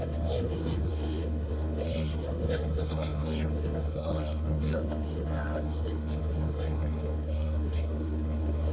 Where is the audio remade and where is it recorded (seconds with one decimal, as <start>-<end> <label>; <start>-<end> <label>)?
0.0-8.7 remade